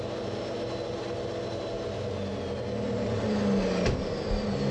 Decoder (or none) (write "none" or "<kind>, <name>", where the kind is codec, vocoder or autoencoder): none